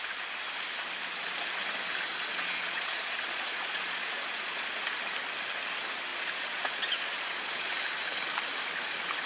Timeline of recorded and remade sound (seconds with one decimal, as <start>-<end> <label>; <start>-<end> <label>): 0.0-2.1 recorded; 2.1-4.8 remade; 4.8-6.1 recorded; 6.1-7.7 remade; 7.7-9.3 recorded